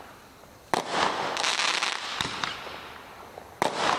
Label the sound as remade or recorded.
recorded